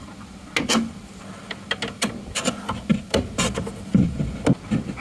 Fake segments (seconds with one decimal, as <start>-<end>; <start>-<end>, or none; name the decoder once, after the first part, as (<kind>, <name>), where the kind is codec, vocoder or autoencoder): none